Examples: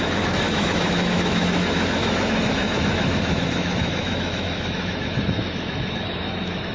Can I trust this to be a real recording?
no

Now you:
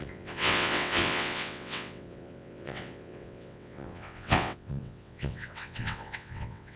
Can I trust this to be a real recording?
no